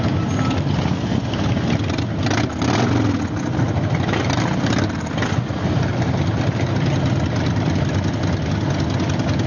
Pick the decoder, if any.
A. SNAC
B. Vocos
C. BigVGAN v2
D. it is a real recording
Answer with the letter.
D